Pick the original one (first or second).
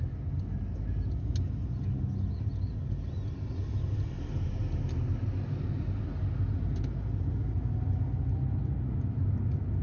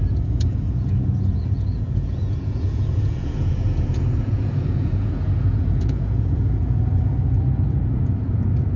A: first